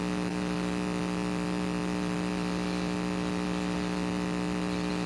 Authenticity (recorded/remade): recorded